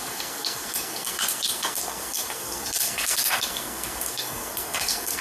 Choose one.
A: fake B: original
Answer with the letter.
A